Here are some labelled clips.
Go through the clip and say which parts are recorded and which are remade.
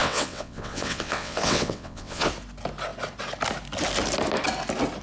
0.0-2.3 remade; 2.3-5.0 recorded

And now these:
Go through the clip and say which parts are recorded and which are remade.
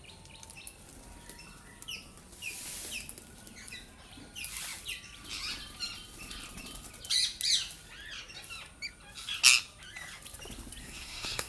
0.0-10.8 recorded; 10.8-11.5 remade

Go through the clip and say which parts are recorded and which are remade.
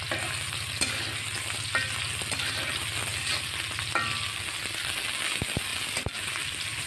0.0-5.7 recorded; 5.7-6.9 remade